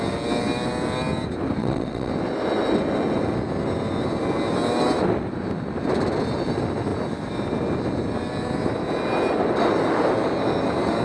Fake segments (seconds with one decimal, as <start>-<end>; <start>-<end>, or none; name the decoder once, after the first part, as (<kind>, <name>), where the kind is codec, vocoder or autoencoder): 1.6-2.1 (vocoder, WaveNeXt)